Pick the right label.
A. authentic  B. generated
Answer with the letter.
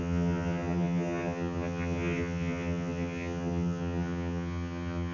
B